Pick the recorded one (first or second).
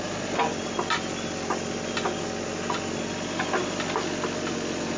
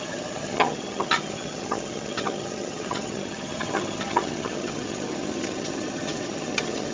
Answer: first